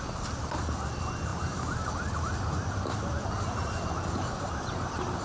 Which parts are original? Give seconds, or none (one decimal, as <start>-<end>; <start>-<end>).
0.0-5.2